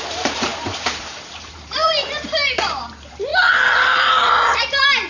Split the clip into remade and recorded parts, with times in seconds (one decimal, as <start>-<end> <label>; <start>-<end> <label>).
0.0-3.3 remade; 3.3-4.1 recorded; 4.1-5.1 remade